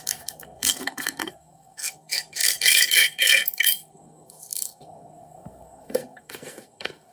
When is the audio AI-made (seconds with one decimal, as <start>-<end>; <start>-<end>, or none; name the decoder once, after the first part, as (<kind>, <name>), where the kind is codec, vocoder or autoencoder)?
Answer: 0.0-7.1 (codec, SNAC)